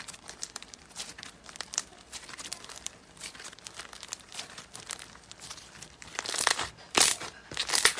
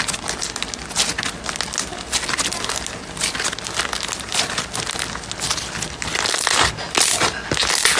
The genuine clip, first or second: second